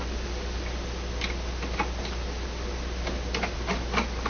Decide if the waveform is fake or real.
real